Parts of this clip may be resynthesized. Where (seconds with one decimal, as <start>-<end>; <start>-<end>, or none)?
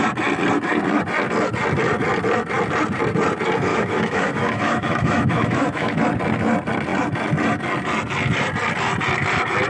3.7-6.0